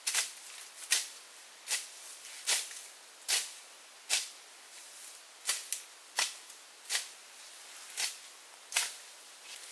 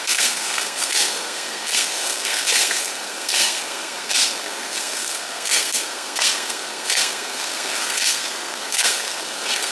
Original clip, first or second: first